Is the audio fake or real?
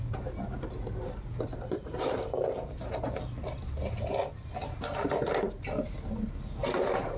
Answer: real